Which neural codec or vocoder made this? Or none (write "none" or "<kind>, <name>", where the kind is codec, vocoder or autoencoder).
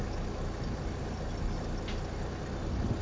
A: none